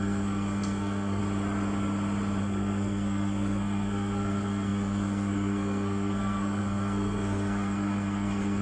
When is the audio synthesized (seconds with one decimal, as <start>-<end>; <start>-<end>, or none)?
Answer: 0.0-1.2; 2.4-8.6